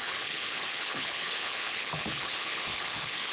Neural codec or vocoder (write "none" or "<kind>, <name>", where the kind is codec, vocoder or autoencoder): codec, HILCodec